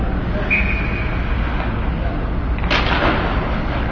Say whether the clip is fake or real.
real